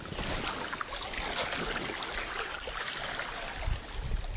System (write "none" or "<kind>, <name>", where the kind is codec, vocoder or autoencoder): none